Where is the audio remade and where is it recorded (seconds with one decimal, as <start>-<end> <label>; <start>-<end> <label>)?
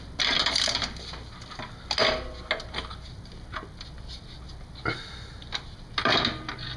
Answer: 0.0-6.8 recorded